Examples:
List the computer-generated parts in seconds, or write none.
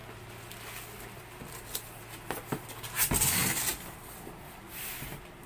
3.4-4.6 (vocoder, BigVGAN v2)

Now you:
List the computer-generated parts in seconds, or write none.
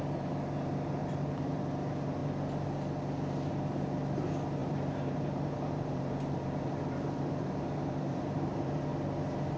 1.0-1.6 (vocoder, BigVGAN v2); 4.6-8.9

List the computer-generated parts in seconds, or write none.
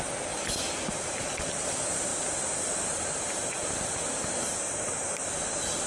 none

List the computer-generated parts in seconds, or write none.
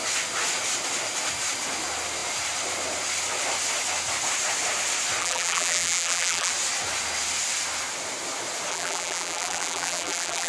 5.2-6.5 (vocoder, BigVGAN v2); 8.7-10.5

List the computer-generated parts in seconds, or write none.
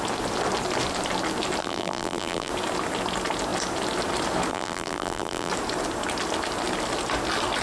1.6-2.5 (vocoder, BigVGAN v2); 4.5-5.5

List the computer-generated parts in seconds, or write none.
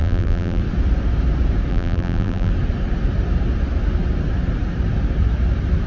0.0-0.6 (vocoder, BigVGAN v2); 1.7-2.5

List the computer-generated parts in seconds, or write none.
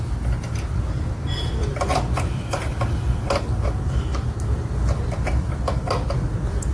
none